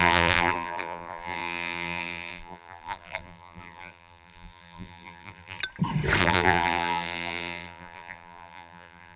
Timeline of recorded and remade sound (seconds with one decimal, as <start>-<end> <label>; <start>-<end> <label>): 0.0-5.6 remade; 5.6-6.2 recorded; 6.2-9.2 remade